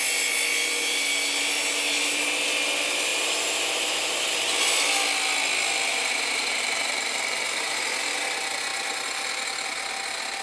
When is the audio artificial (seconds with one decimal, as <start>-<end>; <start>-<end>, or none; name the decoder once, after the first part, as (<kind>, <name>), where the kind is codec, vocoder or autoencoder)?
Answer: 5.9-7.8 (vocoder, BigVGAN v2)